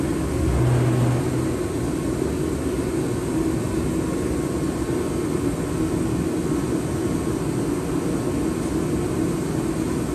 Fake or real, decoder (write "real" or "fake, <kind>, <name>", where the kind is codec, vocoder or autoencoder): real